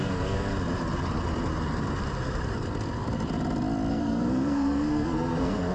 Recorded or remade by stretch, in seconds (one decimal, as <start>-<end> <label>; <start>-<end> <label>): 0.0-0.5 remade; 0.5-3.9 recorded; 3.9-5.7 remade